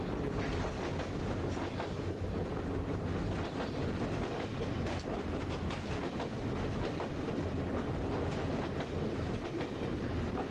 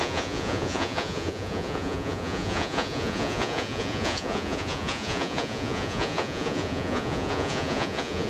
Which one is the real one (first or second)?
first